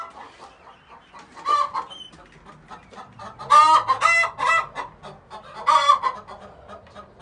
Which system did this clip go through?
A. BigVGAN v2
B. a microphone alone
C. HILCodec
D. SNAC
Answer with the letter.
B